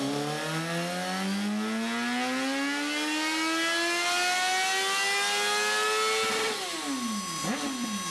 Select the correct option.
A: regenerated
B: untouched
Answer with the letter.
B